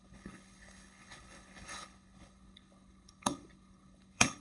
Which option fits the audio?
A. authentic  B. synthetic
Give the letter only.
B